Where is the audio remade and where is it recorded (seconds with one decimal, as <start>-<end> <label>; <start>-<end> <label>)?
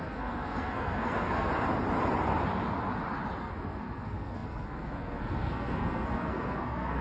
0.0-1.5 remade; 1.5-3.4 recorded; 3.4-7.0 remade